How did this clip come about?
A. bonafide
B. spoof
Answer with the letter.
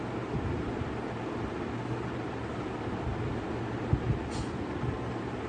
A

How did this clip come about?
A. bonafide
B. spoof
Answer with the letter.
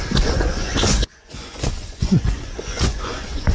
B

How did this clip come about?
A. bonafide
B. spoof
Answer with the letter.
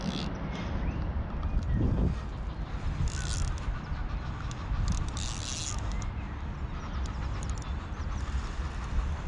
A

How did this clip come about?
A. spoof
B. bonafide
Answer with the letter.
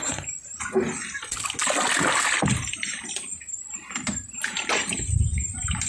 B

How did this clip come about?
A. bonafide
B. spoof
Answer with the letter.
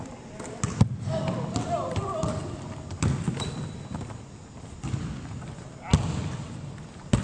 A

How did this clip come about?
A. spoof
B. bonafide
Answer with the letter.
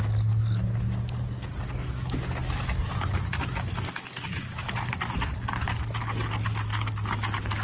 B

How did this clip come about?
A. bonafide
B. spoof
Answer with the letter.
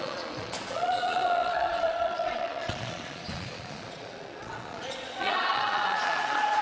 B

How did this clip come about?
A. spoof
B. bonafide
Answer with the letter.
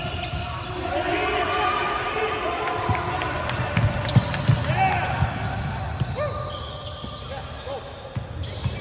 B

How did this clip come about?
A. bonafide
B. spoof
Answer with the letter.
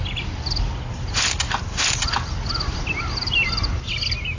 A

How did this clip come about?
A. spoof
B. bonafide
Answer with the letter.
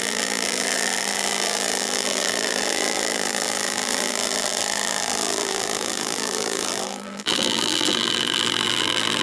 A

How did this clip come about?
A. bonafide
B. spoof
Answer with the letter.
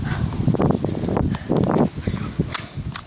A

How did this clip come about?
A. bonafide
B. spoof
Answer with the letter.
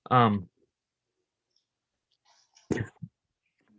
A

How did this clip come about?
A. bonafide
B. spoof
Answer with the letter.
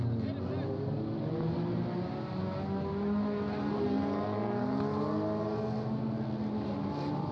A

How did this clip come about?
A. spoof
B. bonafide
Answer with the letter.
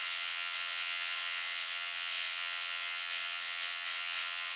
A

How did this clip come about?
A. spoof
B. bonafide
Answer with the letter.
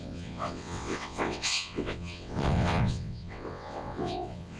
A